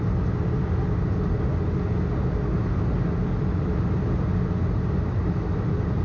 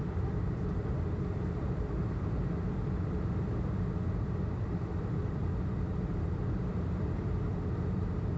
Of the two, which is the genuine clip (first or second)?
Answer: first